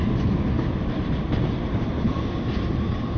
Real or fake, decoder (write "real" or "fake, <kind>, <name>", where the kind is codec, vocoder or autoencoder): real